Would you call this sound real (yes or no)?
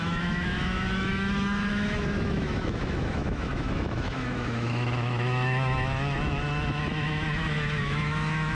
no